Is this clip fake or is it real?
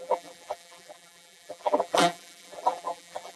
fake